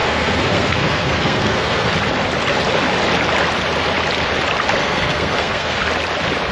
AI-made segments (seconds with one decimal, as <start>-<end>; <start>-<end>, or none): 0.0-1.9; 4.8-5.8